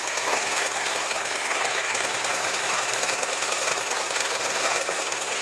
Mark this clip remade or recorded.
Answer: remade